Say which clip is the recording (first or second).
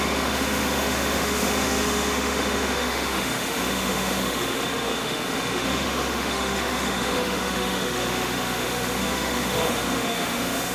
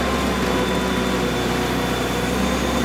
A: second